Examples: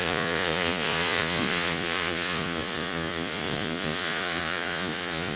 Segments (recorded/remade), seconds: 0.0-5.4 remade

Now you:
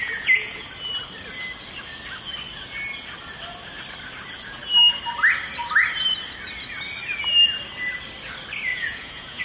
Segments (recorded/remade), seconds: 0.0-0.7 remade; 0.7-8.7 recorded; 8.7-9.4 remade

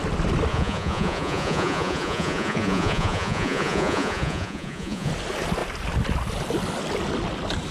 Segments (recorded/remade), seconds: 0.0-0.5 recorded; 0.5-5.1 remade; 5.1-7.7 recorded

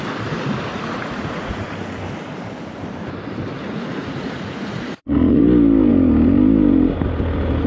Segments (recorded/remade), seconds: 0.0-0.7 recorded; 0.7-1.7 remade; 1.7-3.6 recorded; 3.6-5.4 remade; 5.4-7.7 recorded

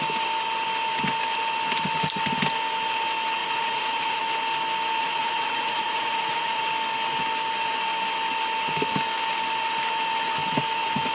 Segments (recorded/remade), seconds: 0.0-3.4 recorded; 3.4-4.2 remade; 4.2-5.0 recorded; 5.0-6.6 remade; 6.6-11.1 recorded

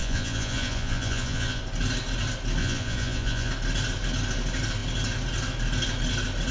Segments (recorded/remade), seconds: 0.0-1.6 remade; 1.6-2.6 recorded; 2.6-3.5 remade; 3.5-6.5 recorded

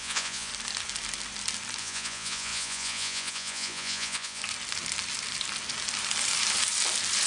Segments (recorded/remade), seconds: 0.0-0.5 remade; 0.5-1.8 recorded; 1.8-4.4 remade; 4.4-7.3 recorded

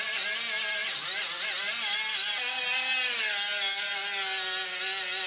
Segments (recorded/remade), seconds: 0.0-5.3 recorded